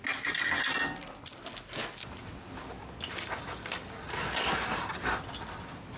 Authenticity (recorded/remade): recorded